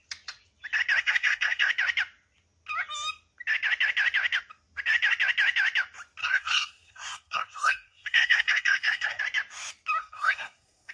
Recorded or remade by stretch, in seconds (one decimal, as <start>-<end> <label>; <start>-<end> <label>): 0.0-1.0 recorded; 1.0-1.7 remade; 1.7-6.2 recorded; 6.2-9.2 remade; 9.2-10.0 recorded; 10.0-10.9 remade